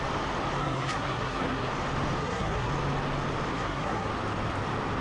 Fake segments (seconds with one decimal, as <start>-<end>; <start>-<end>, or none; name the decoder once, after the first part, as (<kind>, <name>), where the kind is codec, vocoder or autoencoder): 0.6-1.7 (codec, SNAC); 2.2-2.7; 3.5-4.1